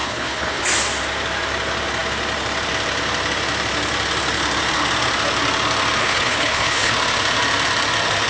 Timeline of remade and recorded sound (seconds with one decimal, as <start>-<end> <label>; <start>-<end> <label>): 0.0-0.6 remade; 0.6-6.0 recorded; 6.0-6.9 remade; 6.9-8.3 recorded